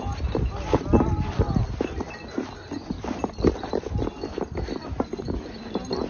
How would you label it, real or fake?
real